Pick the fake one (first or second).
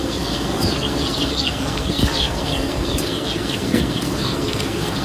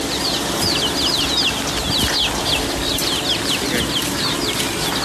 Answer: first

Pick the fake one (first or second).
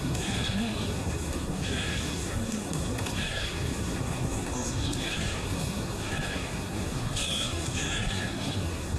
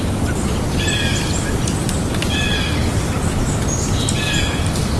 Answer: first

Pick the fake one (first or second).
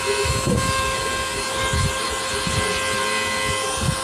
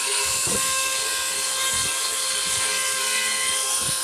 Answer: second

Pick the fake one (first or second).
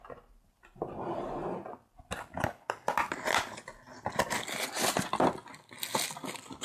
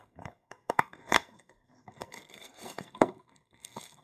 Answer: second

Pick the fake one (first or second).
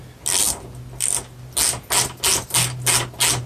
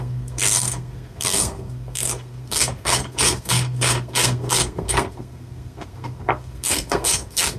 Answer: second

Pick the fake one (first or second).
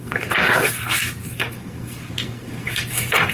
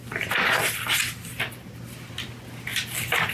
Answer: first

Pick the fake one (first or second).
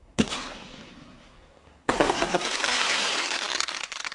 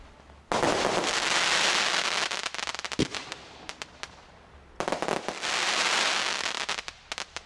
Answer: first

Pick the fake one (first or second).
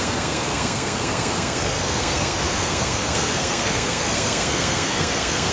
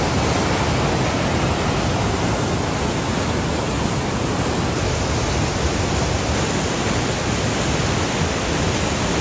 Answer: first